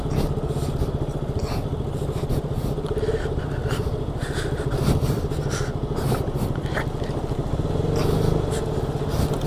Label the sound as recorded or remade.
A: recorded